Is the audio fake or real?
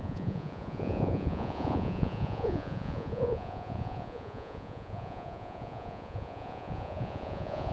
fake